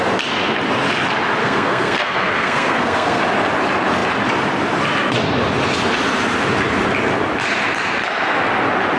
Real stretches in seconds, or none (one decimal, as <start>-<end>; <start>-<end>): 0.0-1.4; 3.2-9.0